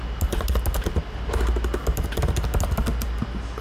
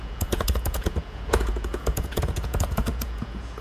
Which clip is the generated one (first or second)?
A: second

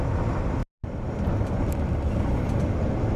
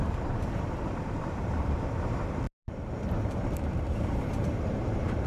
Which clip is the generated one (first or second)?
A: second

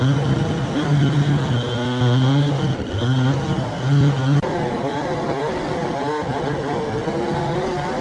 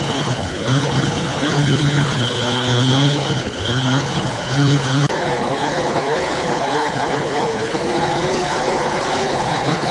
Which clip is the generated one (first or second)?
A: second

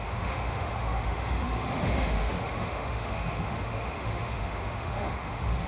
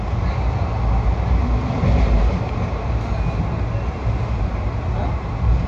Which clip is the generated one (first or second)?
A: first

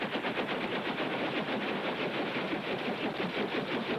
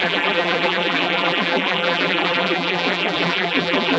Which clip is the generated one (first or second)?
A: second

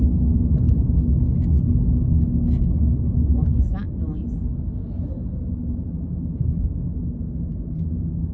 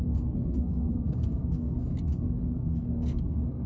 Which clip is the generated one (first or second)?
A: second